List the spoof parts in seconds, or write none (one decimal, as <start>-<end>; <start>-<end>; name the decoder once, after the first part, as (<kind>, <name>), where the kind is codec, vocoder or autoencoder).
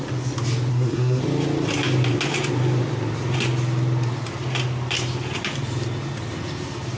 0.7-1.2 (codec, SNAC)